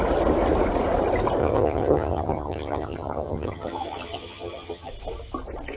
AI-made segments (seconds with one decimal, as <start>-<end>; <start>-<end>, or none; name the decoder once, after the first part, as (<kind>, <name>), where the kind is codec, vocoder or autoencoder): 1.4-4.9 (vocoder, HiFi-GAN)